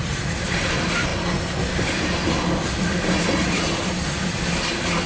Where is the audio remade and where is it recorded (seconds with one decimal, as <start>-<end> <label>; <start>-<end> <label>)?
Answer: 0.0-5.1 recorded